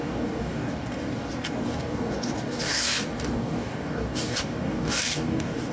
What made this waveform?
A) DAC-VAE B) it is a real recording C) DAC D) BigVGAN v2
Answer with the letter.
C